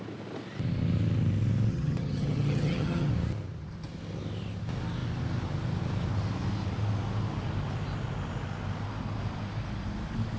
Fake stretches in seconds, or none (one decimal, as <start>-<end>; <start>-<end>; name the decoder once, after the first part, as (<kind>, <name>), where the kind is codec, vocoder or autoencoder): 1.7-3.1 (vocoder, HiFi-GAN)